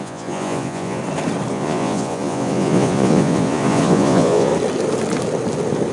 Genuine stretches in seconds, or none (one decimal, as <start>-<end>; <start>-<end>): 1.0-1.5; 4.5-5.9